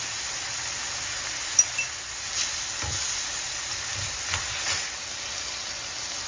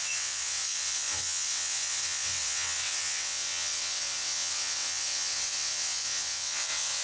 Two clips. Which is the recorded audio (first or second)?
first